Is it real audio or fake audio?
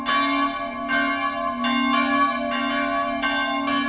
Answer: real